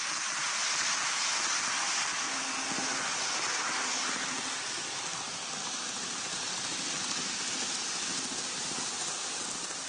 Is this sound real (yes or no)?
yes